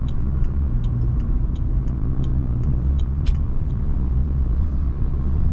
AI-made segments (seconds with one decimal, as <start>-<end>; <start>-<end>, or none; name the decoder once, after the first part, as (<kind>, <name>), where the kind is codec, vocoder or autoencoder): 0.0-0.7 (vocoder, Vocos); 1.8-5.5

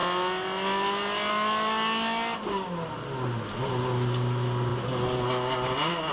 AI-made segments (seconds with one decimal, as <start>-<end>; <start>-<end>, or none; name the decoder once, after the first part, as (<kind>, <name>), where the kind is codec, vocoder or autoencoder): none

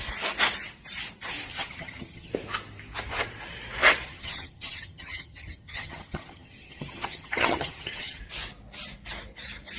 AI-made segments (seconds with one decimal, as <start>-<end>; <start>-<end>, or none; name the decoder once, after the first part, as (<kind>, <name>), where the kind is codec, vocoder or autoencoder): 1.5-2.3 (vocoder, HiFi-GAN); 4.1-8.2

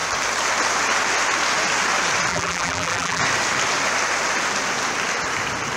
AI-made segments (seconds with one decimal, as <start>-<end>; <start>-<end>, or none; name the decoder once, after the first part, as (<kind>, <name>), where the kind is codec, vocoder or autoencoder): 2.3-3.2 (vocoder, BigVGAN v2)

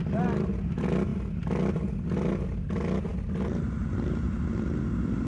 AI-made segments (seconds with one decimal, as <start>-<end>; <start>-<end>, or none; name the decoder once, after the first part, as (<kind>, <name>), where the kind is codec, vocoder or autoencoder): none